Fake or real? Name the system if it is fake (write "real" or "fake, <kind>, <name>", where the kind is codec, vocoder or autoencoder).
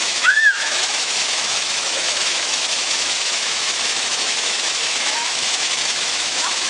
fake, autoencoder, DAC-VAE